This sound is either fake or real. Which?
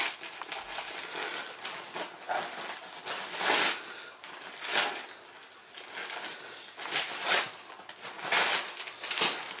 real